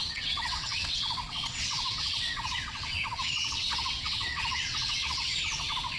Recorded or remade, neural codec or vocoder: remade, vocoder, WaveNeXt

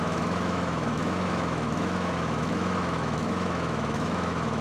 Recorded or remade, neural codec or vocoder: remade, autoencoder, DAC-VAE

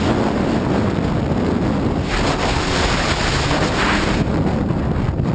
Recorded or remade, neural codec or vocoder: recorded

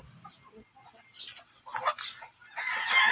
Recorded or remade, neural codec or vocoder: recorded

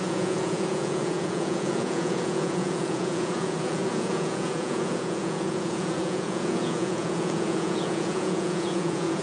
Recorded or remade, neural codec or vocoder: remade, vocoder, Vocos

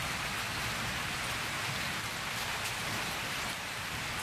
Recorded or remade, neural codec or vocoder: recorded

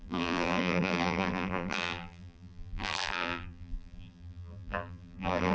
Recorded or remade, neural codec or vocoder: remade, vocoder, BigVGAN v2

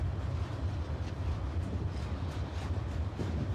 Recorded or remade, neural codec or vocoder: recorded